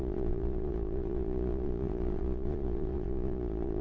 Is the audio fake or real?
fake